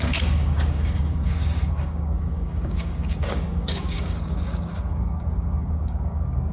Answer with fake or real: fake